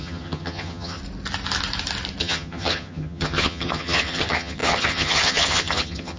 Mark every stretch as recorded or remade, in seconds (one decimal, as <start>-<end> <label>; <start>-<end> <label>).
0.0-1.0 remade; 1.0-2.2 recorded; 2.2-6.2 remade